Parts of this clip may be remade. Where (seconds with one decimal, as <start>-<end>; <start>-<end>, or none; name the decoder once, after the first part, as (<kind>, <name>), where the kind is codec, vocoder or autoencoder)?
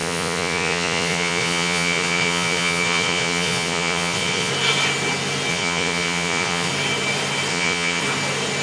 0.0-4.5 (vocoder, Vocos); 5.5-6.7; 7.5-8.0